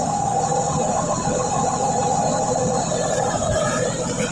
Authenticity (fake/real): real